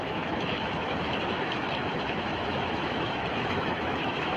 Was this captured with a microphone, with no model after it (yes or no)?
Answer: no